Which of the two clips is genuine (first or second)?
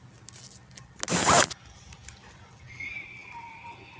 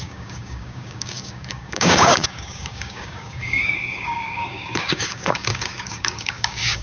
first